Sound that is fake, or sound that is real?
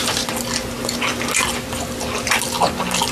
real